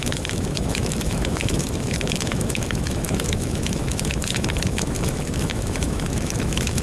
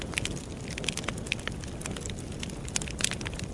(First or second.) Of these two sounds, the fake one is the first